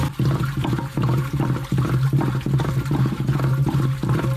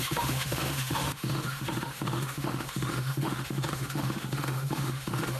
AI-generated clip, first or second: second